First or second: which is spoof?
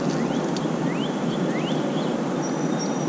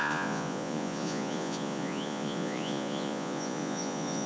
second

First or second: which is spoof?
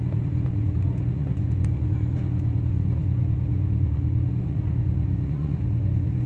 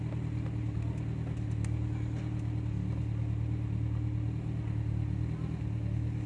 first